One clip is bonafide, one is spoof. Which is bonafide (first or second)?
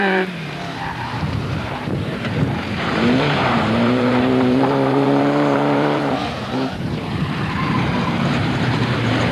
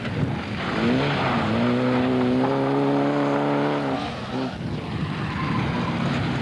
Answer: second